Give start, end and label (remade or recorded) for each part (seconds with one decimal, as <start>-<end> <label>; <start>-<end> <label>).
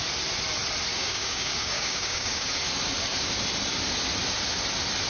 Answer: 0.0-0.9 recorded; 0.9-2.5 remade; 2.5-5.1 recorded